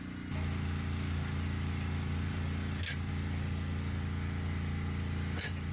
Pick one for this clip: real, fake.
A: real